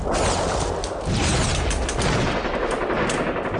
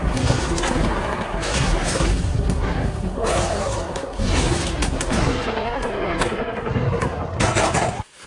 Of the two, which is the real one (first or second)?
first